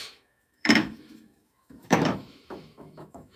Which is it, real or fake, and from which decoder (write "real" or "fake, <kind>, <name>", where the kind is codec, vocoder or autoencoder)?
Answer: fake, autoencoder, DAC-VAE